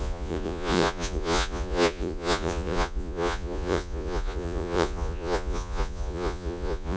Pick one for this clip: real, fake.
fake